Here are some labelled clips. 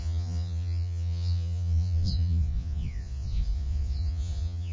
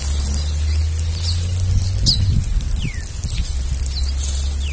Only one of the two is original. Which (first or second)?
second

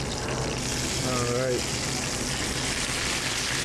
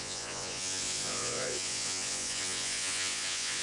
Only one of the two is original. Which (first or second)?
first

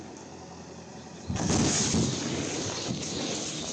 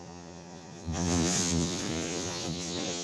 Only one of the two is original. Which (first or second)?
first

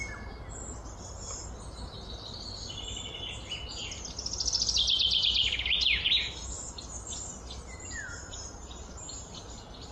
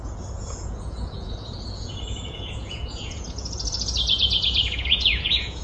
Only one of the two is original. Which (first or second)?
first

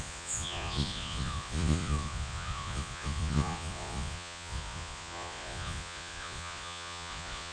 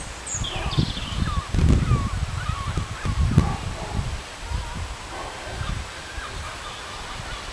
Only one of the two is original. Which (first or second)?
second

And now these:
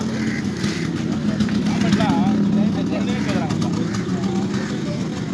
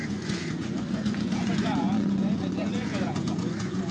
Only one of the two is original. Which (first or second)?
first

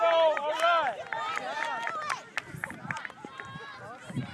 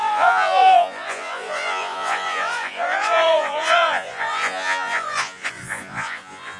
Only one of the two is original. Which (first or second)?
first